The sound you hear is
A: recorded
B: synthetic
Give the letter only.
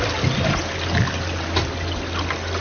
A